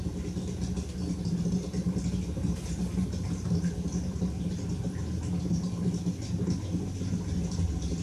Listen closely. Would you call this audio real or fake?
real